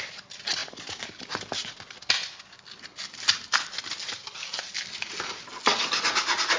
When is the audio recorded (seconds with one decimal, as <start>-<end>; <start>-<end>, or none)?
0.0-6.6